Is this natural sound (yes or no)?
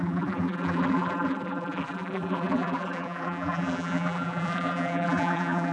no